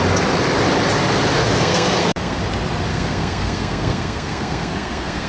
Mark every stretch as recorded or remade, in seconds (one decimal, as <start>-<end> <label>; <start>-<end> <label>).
0.0-1.4 recorded; 1.4-2.4 remade; 2.4-2.9 recorded; 2.9-5.3 remade

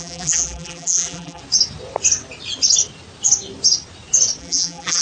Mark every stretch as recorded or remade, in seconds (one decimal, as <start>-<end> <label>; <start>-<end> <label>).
0.0-1.4 remade; 1.4-4.4 recorded; 4.4-5.0 remade